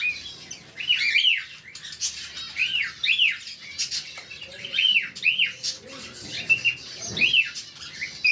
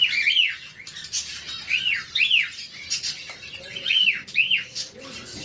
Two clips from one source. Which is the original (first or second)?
first